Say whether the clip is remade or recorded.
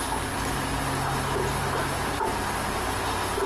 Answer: recorded